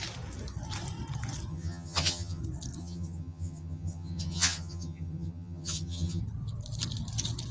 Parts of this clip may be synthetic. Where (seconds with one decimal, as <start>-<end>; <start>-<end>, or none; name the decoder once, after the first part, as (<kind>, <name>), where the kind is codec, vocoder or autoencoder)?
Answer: 1.5-2.4 (vocoder, HiFi-GAN); 2.8-6.2